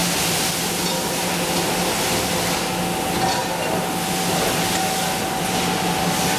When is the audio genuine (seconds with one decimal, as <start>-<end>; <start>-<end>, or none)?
0.0-6.4